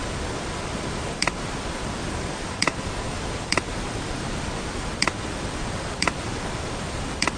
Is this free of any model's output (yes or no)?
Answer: no